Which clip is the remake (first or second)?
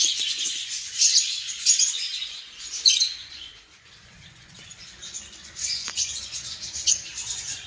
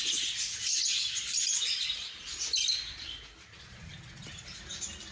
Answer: first